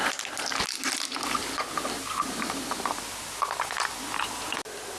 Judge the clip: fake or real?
real